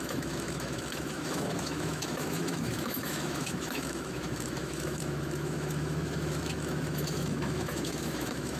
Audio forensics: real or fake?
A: fake